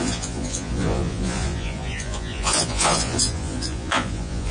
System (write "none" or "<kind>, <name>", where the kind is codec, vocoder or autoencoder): vocoder, Vocos